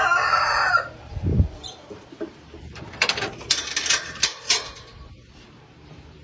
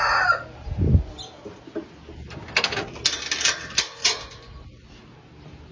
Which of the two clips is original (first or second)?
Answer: second